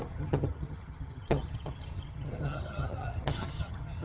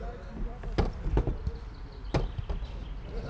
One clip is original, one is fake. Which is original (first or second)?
second